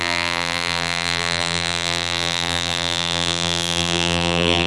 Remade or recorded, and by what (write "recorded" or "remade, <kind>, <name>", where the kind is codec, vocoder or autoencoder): remade, vocoder, BigVGAN v2